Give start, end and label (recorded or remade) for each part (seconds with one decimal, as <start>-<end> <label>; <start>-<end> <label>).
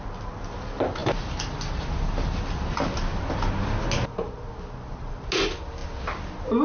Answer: 0.0-6.6 recorded